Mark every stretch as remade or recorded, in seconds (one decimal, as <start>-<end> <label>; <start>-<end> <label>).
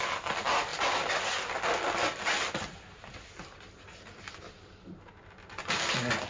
0.0-6.3 recorded